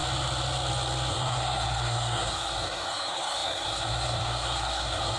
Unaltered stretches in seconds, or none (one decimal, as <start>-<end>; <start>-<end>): 0.0-1.1